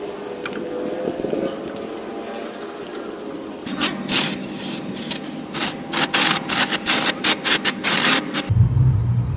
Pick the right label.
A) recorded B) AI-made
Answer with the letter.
A